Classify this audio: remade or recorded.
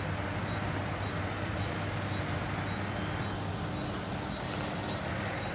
recorded